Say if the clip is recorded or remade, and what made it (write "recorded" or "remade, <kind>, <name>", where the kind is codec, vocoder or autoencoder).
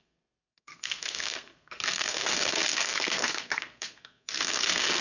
remade, codec, SNAC